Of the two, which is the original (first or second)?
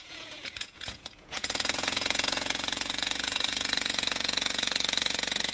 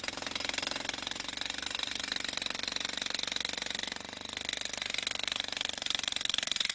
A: second